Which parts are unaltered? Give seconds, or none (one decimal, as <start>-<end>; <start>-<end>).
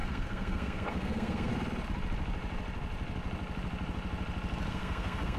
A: 1.5-4.7